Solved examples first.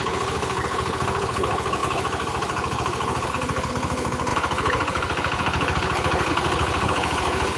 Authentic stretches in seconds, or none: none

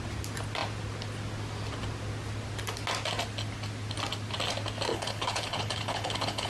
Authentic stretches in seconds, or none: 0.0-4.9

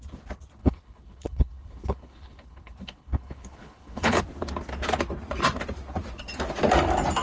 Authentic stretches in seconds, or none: 0.0-0.6; 4.2-7.2